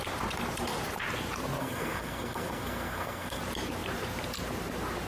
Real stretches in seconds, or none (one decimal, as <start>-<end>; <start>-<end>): 0.0-1.6; 3.4-5.1